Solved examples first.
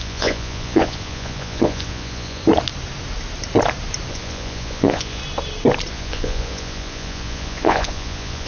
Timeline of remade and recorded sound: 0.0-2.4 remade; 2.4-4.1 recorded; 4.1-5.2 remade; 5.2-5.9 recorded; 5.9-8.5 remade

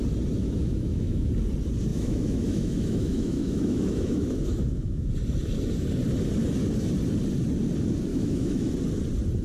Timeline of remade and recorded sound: 0.0-0.4 recorded; 0.4-1.3 remade; 1.3-1.9 recorded; 1.9-5.1 remade; 5.1-8.1 recorded; 8.1-8.7 remade; 8.7-9.4 recorded